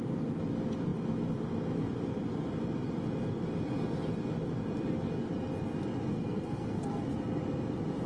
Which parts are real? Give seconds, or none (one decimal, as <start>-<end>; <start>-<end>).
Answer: 0.0-6.1; 7.2-8.1